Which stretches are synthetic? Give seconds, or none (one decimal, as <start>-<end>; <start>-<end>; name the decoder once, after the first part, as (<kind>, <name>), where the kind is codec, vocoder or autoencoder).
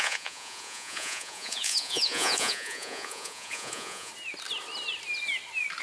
0.0-4.1 (vocoder, Vocos)